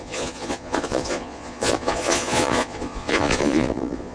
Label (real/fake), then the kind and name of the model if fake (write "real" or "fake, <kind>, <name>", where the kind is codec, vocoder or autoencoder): fake, vocoder, Vocos